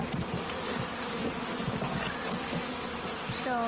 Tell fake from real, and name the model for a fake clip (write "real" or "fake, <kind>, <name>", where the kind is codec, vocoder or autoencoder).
real